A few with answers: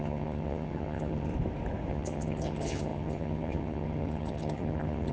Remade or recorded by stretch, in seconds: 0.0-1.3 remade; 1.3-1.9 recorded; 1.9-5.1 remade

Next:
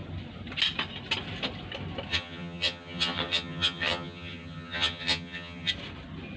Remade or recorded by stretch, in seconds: 0.0-2.1 recorded; 2.1-5.7 remade; 5.7-6.4 recorded

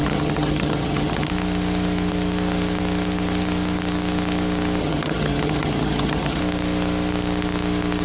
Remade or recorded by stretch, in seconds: 0.0-1.3 remade; 1.3-4.8 recorded; 4.8-6.4 remade; 6.4-8.0 recorded

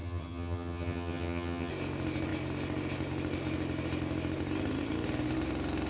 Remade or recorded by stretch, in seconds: 0.0-1.7 remade; 1.7-5.9 recorded

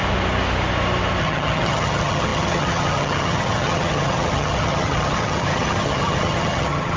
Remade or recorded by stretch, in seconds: 0.0-1.2 recorded; 1.2-7.0 remade

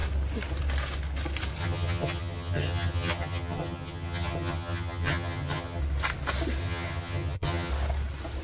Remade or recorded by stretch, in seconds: 0.0-1.6 recorded; 1.6-5.8 remade; 5.8-6.6 recorded; 6.6-7.7 remade; 7.7-8.4 recorded

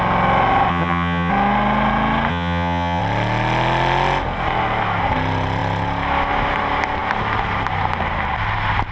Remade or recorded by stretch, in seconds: 0.0-0.7 recorded; 0.7-1.3 remade; 1.3-2.3 recorded; 2.3-3.0 remade; 3.0-8.9 recorded